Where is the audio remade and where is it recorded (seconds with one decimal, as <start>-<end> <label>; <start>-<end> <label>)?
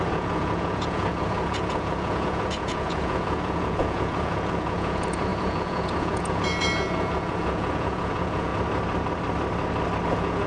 0.0-8.5 remade; 8.5-10.1 recorded; 10.1-10.5 remade